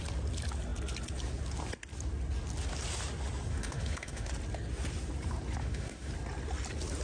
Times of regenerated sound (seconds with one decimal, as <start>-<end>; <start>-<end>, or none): 3.5-4.3; 5.6-6.1